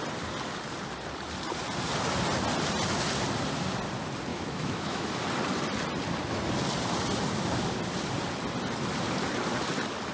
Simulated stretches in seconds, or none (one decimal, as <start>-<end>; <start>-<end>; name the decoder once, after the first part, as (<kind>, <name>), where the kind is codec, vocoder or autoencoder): 4.3-5.1 (autoencoder, DAC-VAE)